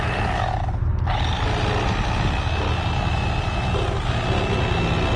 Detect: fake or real real